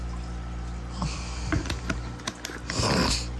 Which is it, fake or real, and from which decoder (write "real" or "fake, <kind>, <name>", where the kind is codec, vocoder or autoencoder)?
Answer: real